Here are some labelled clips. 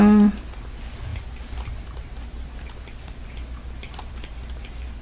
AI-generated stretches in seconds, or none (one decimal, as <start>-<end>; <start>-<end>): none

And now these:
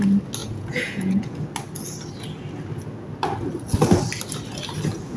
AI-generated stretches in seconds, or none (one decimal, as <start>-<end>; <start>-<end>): 0.4-1.4

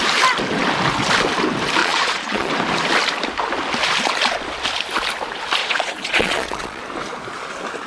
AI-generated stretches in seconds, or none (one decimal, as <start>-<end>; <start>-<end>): 1.8-2.5; 5.6-6.8

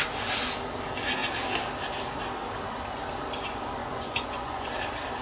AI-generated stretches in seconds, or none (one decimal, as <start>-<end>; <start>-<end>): 3.8-4.7